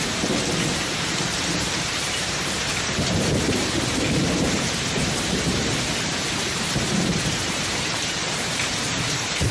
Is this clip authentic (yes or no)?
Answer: no